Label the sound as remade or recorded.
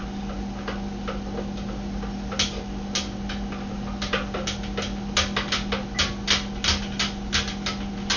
recorded